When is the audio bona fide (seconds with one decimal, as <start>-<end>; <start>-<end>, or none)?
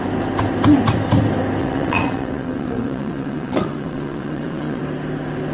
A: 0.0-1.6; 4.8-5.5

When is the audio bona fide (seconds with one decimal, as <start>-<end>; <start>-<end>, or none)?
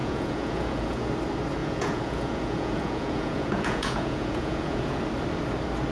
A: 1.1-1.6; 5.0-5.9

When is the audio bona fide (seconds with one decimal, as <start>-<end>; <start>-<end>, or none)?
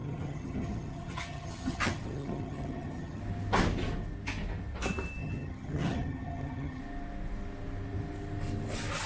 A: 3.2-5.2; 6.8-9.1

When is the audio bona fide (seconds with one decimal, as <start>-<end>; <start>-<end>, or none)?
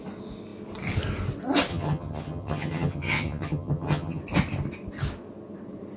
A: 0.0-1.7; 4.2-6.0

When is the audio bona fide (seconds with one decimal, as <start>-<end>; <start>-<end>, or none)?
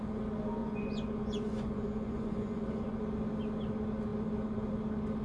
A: 0.0-0.6; 3.0-5.2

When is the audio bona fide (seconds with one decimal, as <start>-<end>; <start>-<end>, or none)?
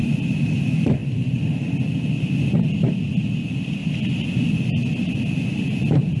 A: 0.0-6.2